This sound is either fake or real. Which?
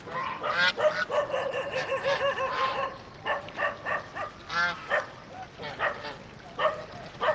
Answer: real